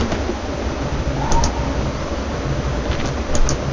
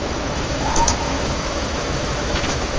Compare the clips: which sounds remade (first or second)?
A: second